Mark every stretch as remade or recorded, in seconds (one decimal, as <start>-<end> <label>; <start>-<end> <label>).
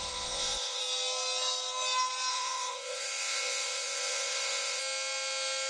0.0-0.8 remade; 0.8-2.3 recorded; 2.3-4.8 remade; 4.8-5.7 recorded